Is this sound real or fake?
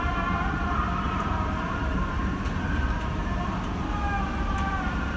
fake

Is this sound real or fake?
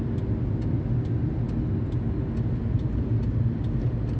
real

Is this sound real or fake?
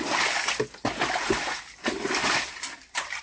real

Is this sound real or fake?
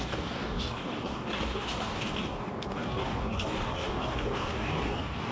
fake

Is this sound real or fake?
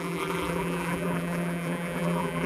fake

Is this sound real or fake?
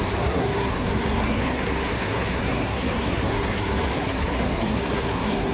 fake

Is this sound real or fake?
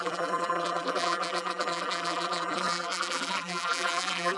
fake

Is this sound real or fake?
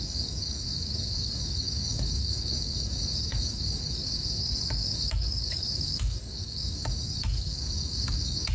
fake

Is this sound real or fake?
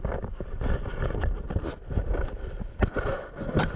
fake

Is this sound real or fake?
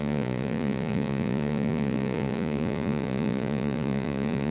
fake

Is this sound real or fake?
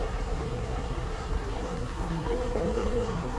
fake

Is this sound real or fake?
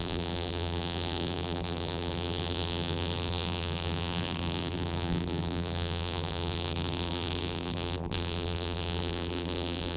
fake